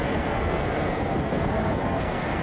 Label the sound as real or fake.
fake